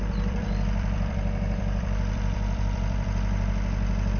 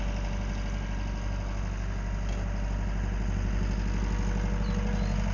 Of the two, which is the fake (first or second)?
first